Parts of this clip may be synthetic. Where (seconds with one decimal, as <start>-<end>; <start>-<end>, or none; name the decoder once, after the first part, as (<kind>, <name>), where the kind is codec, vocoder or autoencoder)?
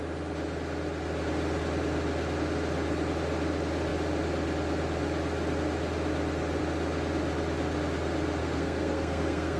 8.4-9.6 (codec, SNAC)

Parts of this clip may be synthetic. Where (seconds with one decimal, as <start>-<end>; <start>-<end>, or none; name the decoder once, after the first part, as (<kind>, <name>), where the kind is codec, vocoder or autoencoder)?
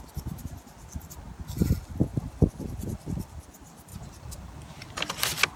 2.1-3.3 (vocoder, BigVGAN v2); 3.9-5.1